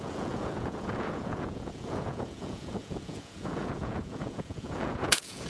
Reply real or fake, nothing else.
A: fake